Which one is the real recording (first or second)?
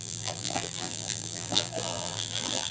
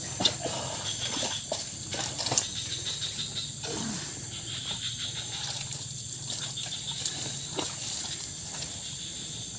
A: second